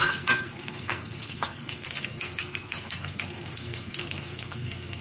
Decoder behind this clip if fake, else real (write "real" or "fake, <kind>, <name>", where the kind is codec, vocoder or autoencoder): fake, codec, SNAC